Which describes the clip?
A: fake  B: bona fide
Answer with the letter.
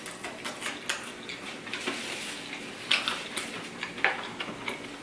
B